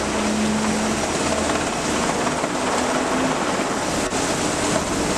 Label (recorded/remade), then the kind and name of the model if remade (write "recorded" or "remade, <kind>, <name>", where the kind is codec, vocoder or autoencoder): recorded